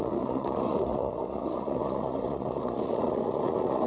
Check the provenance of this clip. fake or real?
fake